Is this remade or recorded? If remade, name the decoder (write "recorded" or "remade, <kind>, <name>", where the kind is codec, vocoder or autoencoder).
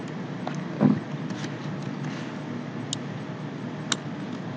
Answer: recorded